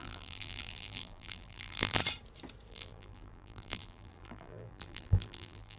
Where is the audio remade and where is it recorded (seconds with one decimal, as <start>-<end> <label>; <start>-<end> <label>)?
0.0-2.0 remade; 2.0-2.7 recorded; 2.7-5.8 remade